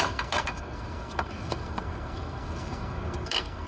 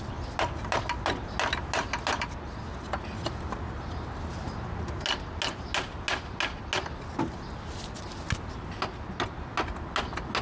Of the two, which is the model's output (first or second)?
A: first